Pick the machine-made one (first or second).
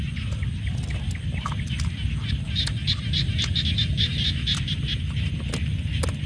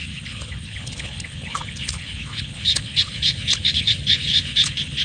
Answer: second